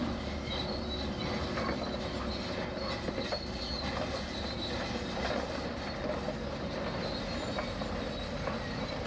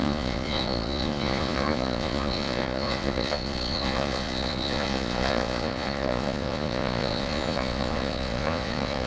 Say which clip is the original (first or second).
first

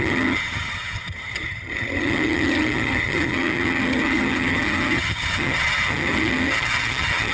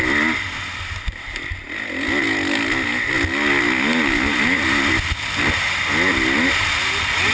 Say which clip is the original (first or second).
second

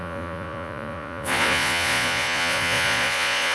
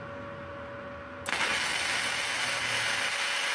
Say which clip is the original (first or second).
second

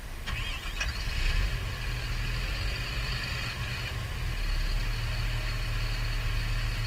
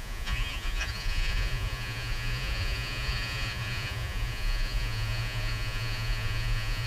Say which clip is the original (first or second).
first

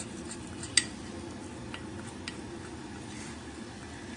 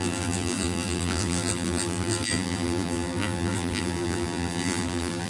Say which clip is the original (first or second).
first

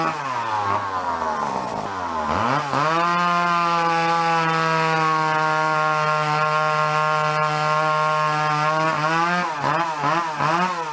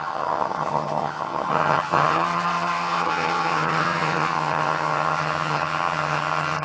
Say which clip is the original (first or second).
first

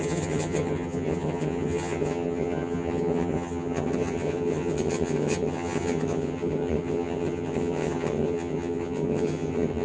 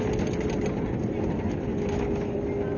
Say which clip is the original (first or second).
second